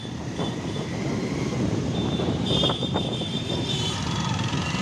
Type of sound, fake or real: fake